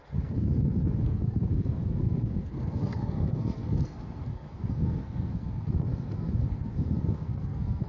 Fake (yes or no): yes